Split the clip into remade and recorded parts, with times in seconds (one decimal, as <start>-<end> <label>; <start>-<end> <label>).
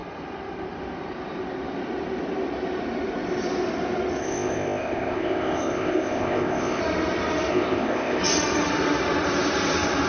0.0-4.2 recorded; 4.2-6.8 remade; 6.8-7.5 recorded; 7.5-8.2 remade; 8.2-10.1 recorded